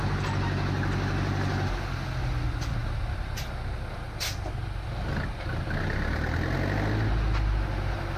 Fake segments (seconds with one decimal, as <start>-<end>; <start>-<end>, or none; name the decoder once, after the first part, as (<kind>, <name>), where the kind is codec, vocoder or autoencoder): none